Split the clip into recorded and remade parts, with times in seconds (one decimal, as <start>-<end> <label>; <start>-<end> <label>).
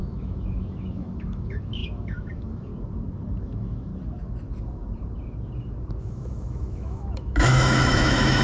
0.0-2.7 remade; 2.7-3.4 recorded; 3.4-3.9 remade; 3.9-6.0 recorded; 6.0-8.4 remade